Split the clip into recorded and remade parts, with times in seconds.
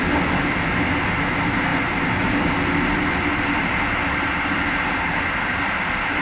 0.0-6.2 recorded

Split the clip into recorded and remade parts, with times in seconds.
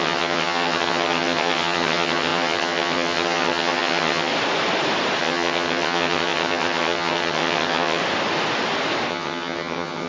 0.0-4.3 remade; 4.3-5.2 recorded; 5.2-8.0 remade; 8.0-9.1 recorded; 9.1-10.1 remade